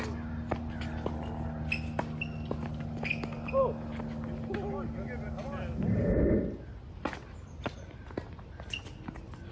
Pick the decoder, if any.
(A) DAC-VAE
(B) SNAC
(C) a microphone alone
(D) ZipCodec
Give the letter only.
C